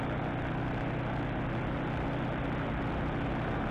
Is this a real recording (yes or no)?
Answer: yes